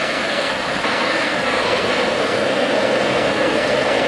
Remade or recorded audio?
remade